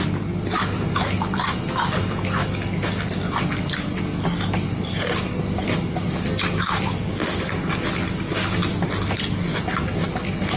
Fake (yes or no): no